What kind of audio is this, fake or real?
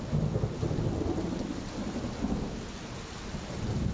real